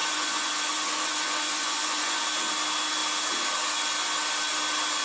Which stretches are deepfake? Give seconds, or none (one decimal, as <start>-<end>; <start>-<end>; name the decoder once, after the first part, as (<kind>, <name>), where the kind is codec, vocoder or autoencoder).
0.0-2.2 (vocoder, Vocos)